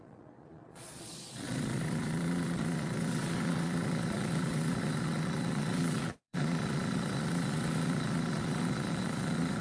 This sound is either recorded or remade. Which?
remade